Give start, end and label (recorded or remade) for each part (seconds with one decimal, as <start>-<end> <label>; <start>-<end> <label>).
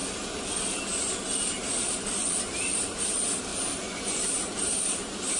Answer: 0.0-3.5 recorded; 3.5-4.2 remade; 4.2-5.4 recorded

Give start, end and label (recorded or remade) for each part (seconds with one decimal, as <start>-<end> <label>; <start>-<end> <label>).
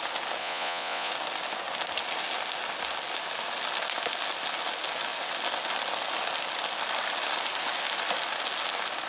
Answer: 0.0-0.4 recorded; 0.4-1.1 remade; 1.1-9.1 recorded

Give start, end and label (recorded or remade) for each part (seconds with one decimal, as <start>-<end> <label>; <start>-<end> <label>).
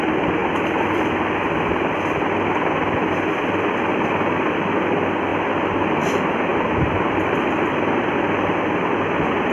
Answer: 0.0-9.5 recorded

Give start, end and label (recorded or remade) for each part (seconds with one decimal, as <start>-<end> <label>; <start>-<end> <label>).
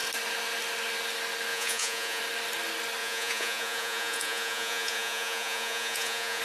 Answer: 0.0-1.5 recorded; 1.5-2.2 remade; 2.2-3.0 recorded; 3.0-6.4 remade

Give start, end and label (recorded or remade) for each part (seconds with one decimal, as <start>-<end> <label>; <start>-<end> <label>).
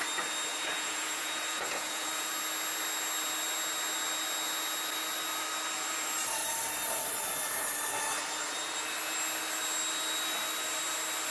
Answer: 0.0-0.5 recorded; 0.5-2.3 remade; 2.3-11.3 recorded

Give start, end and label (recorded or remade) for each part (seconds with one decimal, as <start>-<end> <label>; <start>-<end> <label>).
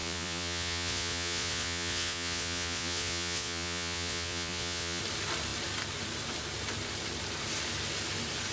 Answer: 0.0-5.0 remade; 5.0-8.5 recorded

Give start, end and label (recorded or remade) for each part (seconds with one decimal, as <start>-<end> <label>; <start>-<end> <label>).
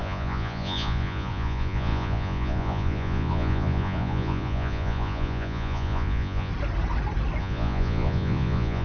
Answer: 0.0-6.5 remade; 6.5-7.4 recorded; 7.4-8.8 remade